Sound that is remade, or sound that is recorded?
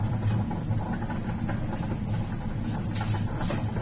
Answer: recorded